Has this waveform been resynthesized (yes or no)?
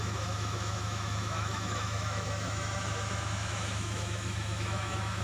yes